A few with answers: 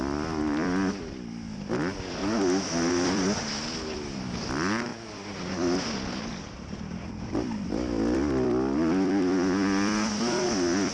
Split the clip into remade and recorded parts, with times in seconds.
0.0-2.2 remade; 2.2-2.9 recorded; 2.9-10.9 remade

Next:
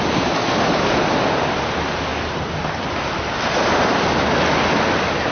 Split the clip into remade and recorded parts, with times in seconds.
0.0-5.3 recorded

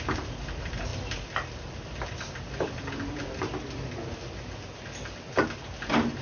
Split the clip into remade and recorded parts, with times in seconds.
0.0-6.2 recorded

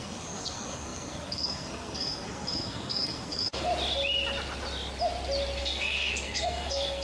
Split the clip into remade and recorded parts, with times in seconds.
0.0-3.7 remade; 3.7-5.6 recorded; 5.6-7.0 remade

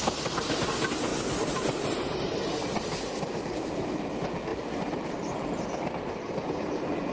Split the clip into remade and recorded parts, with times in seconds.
0.0-7.1 recorded